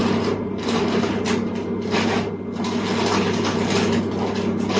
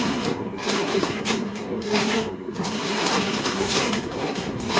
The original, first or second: first